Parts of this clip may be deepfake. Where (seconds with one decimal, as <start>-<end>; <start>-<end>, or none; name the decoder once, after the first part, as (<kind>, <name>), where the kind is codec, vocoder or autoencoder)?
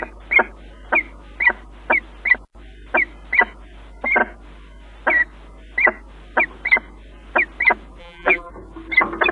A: 8.0-8.5 (vocoder, BigVGAN v2)